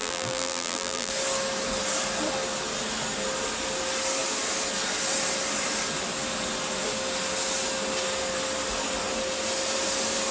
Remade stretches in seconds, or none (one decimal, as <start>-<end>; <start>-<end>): 0.0-1.1